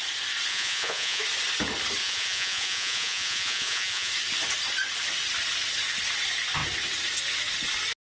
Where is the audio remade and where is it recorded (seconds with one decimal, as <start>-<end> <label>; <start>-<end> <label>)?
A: 0.0-0.5 recorded; 0.5-1.2 remade; 1.2-2.0 recorded; 2.0-4.1 remade; 4.1-8.1 recorded